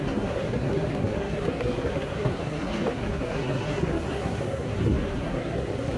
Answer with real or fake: fake